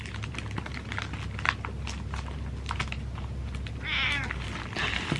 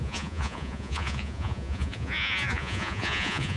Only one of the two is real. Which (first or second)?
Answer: first